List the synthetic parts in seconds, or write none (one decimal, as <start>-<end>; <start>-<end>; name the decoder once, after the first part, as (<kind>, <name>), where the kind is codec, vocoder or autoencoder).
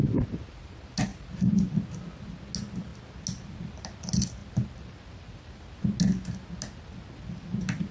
none